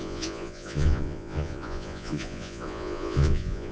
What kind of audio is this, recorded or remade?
remade